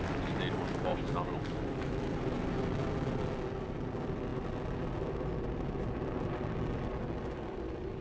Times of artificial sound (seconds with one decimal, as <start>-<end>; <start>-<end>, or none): 0.9-2.1